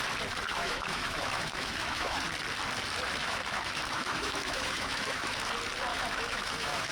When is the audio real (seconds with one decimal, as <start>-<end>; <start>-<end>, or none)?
0.0-0.5; 2.2-3.2; 5.5-5.9